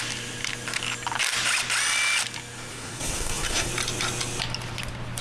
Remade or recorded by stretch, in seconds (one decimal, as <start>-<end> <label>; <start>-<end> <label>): 0.0-2.7 recorded; 2.7-3.7 remade; 3.7-5.2 recorded